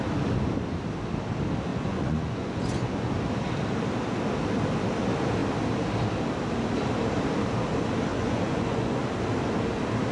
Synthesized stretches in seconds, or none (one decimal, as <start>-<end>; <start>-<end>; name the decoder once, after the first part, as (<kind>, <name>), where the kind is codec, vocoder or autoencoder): 1.7-3.1 (vocoder, Vocos); 8.1-9.0